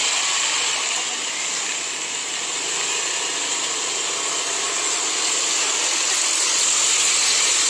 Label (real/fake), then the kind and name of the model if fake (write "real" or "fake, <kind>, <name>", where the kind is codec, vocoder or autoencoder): real